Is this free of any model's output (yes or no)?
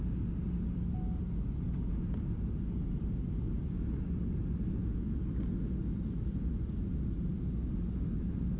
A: yes